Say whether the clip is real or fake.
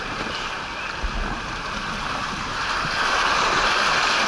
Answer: real